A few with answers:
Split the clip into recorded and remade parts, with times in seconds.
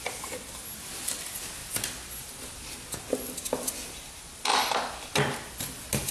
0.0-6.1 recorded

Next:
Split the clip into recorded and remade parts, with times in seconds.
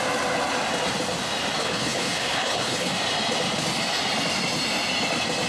0.0-1.6 recorded; 1.6-2.9 remade; 2.9-5.5 recorded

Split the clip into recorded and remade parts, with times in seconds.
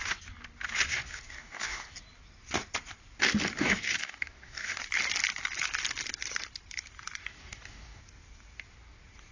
0.0-0.9 recorded; 0.9-1.9 remade; 1.9-3.6 recorded; 3.6-4.8 remade; 4.8-7.2 recorded; 7.2-8.0 remade; 8.0-9.3 recorded